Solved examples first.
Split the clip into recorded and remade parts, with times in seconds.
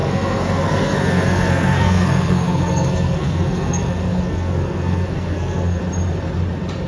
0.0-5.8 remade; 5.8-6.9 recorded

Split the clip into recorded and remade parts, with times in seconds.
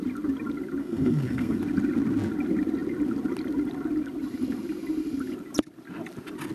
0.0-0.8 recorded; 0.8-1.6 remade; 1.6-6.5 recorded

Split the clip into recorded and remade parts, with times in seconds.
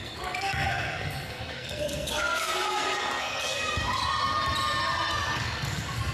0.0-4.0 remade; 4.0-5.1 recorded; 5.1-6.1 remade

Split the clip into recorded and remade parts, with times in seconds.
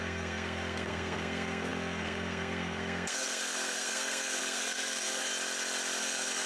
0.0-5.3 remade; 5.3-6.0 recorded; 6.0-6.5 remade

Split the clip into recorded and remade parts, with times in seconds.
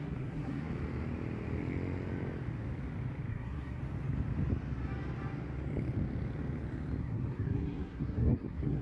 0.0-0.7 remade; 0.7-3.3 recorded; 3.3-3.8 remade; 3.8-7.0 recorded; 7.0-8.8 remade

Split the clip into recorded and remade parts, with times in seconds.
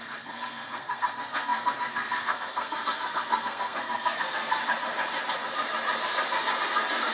0.0-4.6 remade; 4.6-7.1 recorded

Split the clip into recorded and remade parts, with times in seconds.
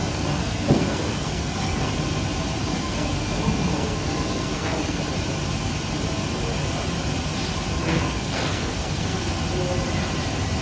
0.0-1.9 remade; 1.9-2.6 recorded; 2.6-5.0 remade; 5.0-7.8 recorded; 7.8-9.3 remade; 9.3-10.6 recorded